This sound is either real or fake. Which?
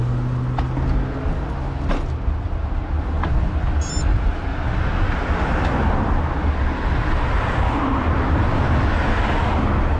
real